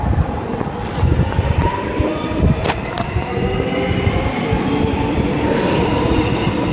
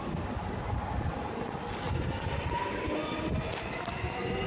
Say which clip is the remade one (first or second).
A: first